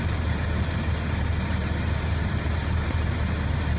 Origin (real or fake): real